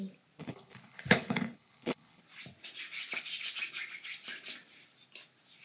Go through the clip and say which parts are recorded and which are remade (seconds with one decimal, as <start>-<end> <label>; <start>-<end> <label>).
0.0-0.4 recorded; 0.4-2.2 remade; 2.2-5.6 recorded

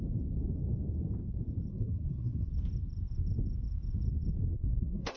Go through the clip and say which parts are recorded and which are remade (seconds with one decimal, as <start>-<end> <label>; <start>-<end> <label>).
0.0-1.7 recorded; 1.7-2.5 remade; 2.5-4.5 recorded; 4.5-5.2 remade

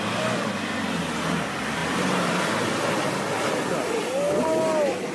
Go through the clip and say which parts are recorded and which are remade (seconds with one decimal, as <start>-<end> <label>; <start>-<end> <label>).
0.0-5.1 recorded

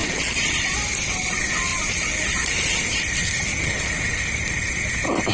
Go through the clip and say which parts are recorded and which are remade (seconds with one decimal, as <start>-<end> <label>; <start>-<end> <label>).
0.0-0.6 remade; 0.6-1.7 recorded; 1.7-5.3 remade

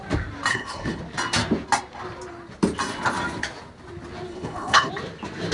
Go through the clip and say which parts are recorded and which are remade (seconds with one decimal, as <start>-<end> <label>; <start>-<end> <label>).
0.0-0.5 recorded; 0.5-1.0 remade; 1.0-4.3 recorded; 4.3-4.9 remade; 4.9-5.5 recorded

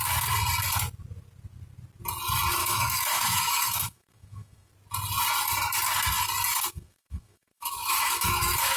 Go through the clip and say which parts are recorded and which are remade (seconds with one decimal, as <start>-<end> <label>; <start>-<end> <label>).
0.0-2.6 recorded; 2.6-4.7 remade; 4.7-6.5 recorded; 6.5-8.8 remade

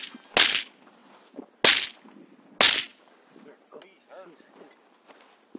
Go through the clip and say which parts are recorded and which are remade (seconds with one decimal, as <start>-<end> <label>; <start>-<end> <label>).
0.0-5.6 recorded